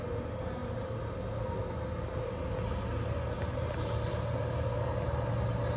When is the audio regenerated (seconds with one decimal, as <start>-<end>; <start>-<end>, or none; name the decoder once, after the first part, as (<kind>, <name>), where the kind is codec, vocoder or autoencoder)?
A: none